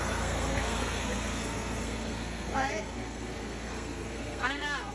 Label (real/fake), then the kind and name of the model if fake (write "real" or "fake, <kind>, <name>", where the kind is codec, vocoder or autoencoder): fake, codec, SNAC